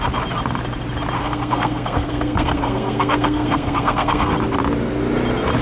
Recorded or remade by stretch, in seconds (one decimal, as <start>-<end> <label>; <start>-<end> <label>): 0.0-1.2 recorded; 1.2-4.3 remade; 4.3-5.6 recorded